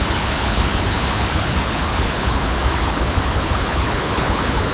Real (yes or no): no